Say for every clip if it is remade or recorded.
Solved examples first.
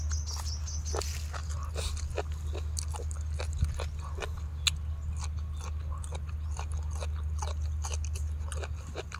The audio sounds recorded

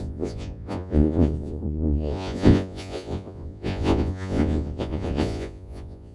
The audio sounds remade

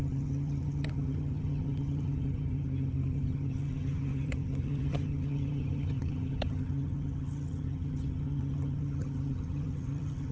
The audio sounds remade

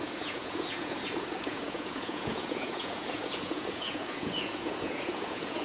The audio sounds remade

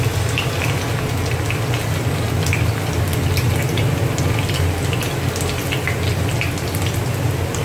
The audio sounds recorded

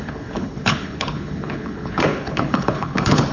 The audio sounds remade